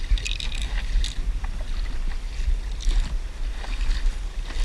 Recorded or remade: recorded